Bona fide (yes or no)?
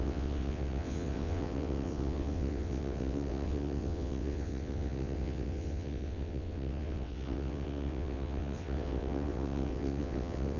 no